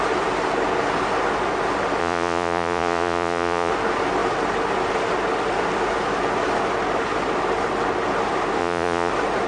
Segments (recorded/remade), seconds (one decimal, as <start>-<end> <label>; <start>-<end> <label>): 0.0-2.0 recorded; 2.0-3.7 remade; 3.7-8.6 recorded; 8.6-9.1 remade; 9.1-9.5 recorded